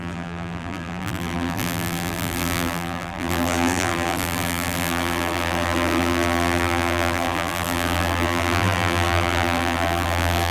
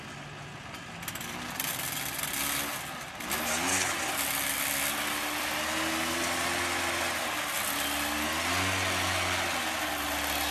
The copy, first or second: first